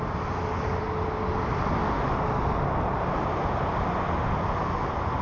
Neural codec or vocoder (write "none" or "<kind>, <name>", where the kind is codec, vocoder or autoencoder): none